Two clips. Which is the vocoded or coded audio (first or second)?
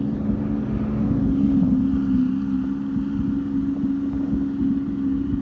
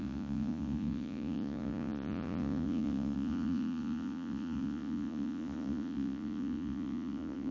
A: second